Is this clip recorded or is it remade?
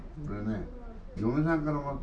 recorded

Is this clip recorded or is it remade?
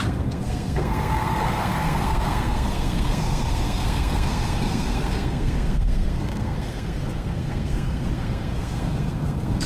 remade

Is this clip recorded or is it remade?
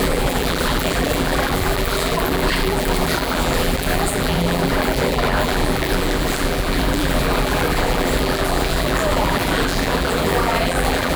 remade